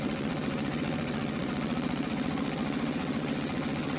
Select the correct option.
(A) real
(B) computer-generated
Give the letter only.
B